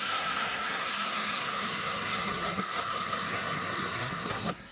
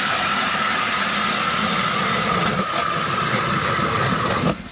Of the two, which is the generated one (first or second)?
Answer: first